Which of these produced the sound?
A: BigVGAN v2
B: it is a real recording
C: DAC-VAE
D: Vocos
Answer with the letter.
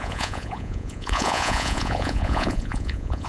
D